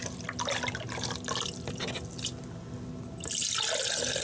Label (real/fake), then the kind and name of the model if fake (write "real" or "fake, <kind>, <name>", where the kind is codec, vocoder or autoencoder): real